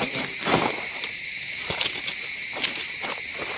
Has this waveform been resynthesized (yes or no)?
yes